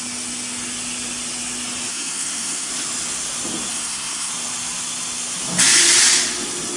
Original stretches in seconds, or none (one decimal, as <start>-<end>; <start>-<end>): 0.0-1.9; 2.7-3.7; 4.3-6.8